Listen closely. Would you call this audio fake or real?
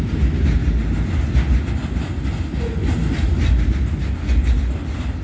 real